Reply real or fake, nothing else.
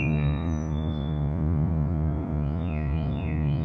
fake